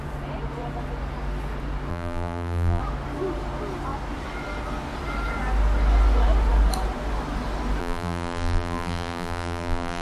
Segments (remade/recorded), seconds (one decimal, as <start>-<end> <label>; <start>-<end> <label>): 0.0-1.9 recorded; 1.9-2.8 remade; 2.8-7.8 recorded; 7.8-10.0 remade